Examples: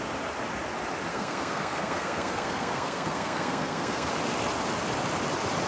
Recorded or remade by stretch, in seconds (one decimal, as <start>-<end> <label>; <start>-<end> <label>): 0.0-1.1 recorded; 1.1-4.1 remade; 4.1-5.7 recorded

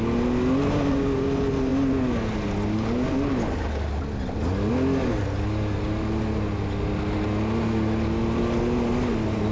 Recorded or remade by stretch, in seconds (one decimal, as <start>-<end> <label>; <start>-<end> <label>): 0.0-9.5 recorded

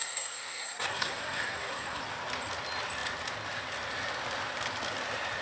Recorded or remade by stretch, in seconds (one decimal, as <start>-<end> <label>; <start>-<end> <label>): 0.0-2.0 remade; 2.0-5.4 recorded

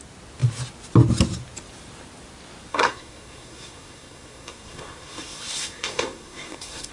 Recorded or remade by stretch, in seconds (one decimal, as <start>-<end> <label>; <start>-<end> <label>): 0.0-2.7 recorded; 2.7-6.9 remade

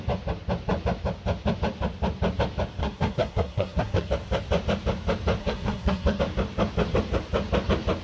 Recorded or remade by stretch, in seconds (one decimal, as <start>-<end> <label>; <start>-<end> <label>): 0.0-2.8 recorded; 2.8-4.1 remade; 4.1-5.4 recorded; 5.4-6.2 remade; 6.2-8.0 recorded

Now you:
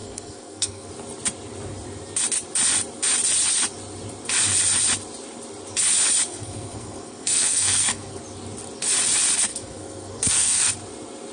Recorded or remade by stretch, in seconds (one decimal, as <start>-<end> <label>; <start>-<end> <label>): 0.0-0.9 remade; 0.9-6.3 recorded; 6.3-8.2 remade; 8.2-9.5 recorded; 9.5-10.7 remade; 10.7-11.3 recorded